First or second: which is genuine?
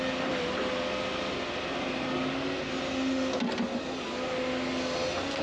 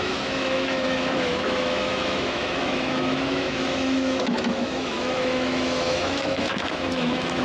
first